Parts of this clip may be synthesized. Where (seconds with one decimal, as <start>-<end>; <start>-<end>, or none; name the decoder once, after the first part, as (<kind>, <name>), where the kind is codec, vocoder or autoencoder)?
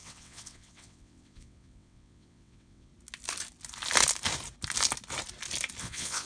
0.0-2.9 (vocoder, WaveNeXt); 5.8-6.3